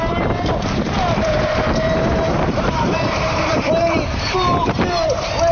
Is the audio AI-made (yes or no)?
yes